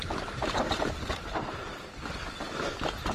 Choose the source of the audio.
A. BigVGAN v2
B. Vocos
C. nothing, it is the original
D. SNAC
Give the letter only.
C